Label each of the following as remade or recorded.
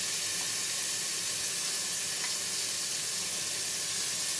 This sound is recorded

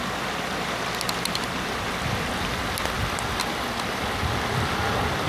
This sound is recorded